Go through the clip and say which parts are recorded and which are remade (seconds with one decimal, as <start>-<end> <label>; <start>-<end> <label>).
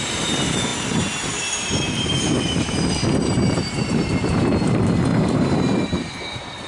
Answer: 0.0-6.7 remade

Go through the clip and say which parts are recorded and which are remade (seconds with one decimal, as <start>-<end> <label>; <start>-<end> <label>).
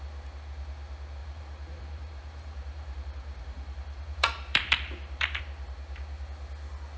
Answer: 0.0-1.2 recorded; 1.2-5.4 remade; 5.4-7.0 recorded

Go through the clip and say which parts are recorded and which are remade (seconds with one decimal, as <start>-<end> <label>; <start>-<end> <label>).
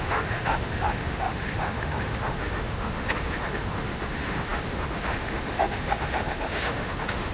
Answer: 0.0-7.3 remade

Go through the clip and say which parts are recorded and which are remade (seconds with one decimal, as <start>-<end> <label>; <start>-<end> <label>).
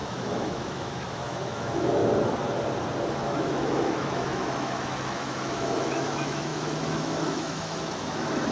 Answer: 0.0-2.0 remade; 2.0-3.1 recorded; 3.1-8.5 remade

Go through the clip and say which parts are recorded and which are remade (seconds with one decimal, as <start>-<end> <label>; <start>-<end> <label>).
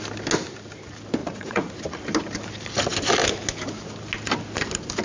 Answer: 0.0-1.2 recorded; 1.2-1.7 remade; 1.7-5.0 recorded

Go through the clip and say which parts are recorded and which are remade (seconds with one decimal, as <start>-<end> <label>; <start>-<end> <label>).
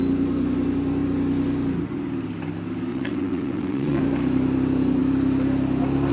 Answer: 0.0-2.9 recorded; 2.9-4.0 remade; 4.0-6.1 recorded